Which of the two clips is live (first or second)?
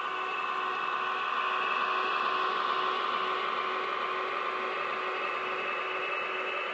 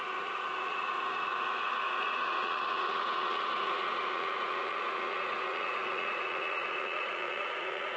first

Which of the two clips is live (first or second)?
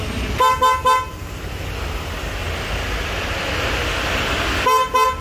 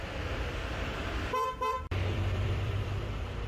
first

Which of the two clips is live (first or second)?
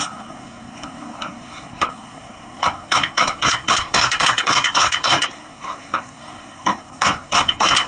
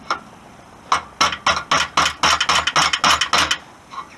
second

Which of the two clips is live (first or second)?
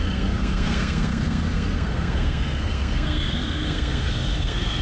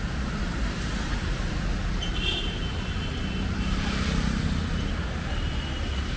second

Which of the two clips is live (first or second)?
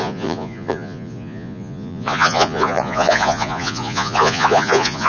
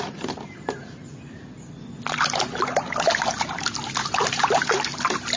second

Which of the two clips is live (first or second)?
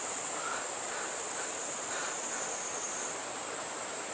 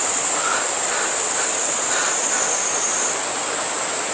second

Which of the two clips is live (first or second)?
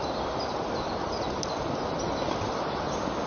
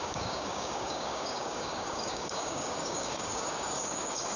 first